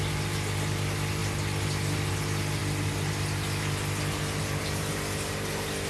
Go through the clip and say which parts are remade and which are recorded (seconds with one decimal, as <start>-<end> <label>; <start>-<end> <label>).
0.0-5.9 recorded